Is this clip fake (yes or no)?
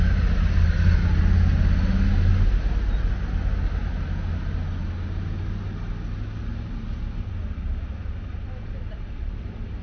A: no